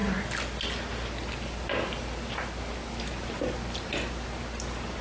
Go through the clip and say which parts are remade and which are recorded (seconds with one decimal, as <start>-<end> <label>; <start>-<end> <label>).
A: 0.0-5.0 recorded